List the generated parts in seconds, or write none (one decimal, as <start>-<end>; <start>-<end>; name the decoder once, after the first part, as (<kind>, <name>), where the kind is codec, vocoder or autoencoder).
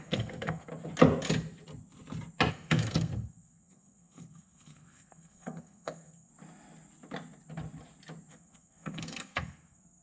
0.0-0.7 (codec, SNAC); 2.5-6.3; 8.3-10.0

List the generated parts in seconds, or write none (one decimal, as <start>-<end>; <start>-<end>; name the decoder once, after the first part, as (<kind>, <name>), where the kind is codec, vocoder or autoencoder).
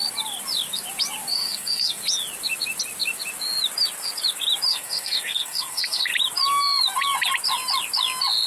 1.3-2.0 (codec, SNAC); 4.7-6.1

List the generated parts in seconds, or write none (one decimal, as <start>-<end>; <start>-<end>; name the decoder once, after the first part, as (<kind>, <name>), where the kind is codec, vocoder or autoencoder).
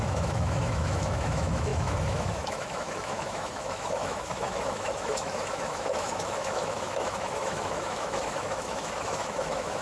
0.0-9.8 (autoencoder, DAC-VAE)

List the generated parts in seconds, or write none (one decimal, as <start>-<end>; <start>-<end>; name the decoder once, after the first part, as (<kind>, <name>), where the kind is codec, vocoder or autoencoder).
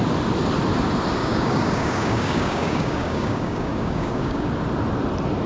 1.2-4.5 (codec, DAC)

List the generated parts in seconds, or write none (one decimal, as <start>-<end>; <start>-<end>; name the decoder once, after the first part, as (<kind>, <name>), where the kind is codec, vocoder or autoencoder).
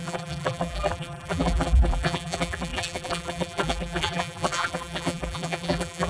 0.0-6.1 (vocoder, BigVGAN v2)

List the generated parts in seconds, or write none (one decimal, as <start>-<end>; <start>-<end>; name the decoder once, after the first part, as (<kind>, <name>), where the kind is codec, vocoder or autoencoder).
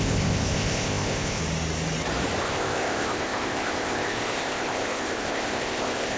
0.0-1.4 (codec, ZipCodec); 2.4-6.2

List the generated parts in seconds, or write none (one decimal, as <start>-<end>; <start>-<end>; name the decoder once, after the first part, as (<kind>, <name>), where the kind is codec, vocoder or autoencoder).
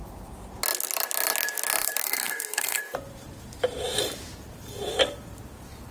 2.0-2.8 (codec, SNAC)